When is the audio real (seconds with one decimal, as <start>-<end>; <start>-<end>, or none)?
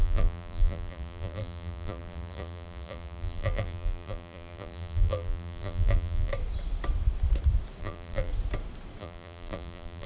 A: 6.3-7.8; 8.3-9.0